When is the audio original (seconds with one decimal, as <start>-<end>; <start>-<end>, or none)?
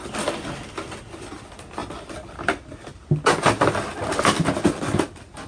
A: 0.0-5.5